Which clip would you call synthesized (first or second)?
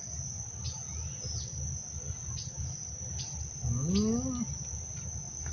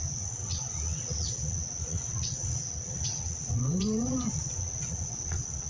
second